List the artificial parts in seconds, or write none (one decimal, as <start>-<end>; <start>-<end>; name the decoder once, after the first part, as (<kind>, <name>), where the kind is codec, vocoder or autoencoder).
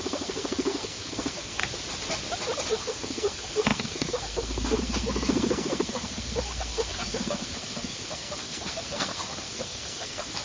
0.0-1.6 (codec, SNAC); 2.7-10.4